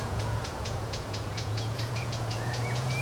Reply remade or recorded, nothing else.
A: remade